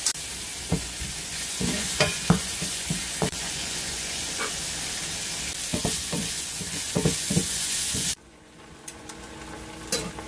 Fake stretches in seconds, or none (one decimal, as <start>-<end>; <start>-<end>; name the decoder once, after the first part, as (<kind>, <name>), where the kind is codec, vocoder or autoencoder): 0.6-4.5 (vocoder, Vocos); 5.7-9.3